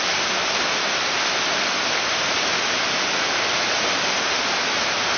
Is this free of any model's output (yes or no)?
yes